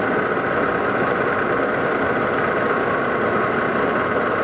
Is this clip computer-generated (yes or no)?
no